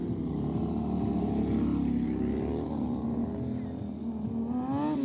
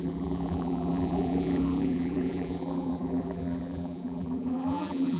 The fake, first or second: second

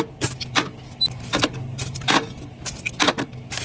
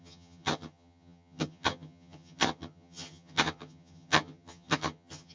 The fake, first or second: second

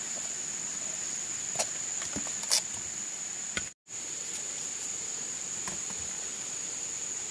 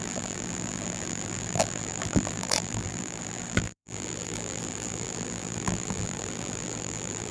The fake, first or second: second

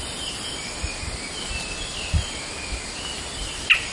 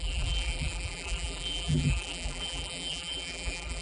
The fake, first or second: second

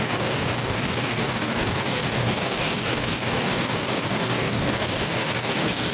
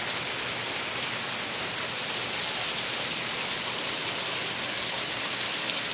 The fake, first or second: first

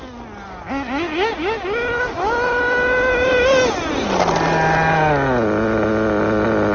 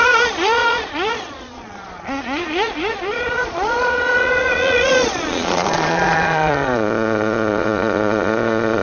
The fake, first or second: second